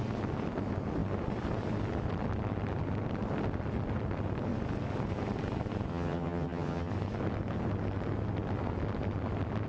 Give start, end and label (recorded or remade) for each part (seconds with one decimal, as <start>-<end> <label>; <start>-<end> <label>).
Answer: 0.0-5.9 recorded; 5.9-6.9 remade; 6.9-9.7 recorded